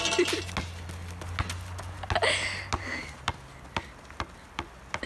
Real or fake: real